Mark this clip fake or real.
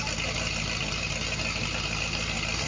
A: real